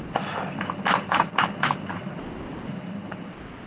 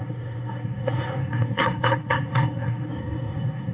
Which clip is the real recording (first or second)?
first